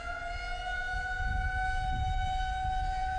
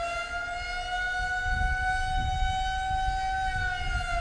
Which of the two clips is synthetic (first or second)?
first